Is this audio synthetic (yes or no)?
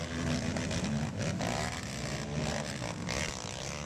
no